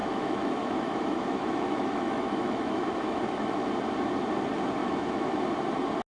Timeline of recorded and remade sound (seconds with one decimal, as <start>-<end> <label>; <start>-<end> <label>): 0.0-3.7 remade; 3.7-4.8 recorded; 4.8-5.4 remade; 5.4-6.2 recorded